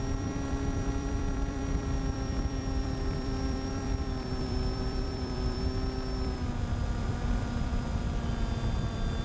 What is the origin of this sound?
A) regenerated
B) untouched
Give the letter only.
A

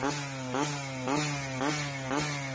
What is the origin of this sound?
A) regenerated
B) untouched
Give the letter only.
B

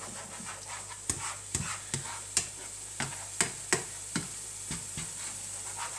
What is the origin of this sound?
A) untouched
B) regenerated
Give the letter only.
A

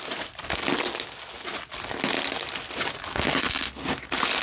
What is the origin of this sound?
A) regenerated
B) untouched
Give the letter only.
B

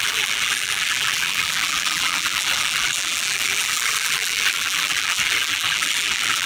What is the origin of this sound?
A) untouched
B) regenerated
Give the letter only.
B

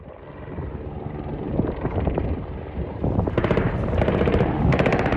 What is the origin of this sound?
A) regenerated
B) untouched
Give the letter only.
A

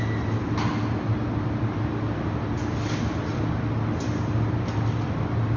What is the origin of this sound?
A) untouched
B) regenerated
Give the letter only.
A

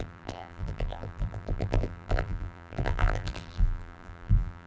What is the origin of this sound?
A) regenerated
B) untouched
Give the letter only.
A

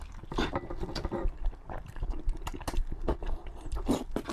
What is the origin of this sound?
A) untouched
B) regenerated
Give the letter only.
A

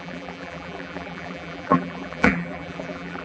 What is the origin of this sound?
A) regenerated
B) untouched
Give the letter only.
A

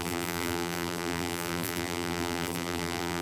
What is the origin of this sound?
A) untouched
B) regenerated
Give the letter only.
B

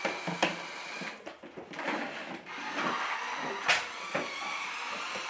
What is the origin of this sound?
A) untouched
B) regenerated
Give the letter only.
A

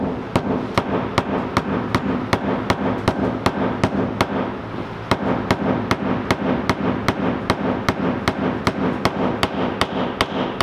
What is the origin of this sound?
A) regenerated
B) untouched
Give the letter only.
B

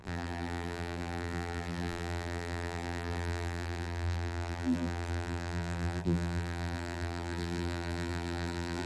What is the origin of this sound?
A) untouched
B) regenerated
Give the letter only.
B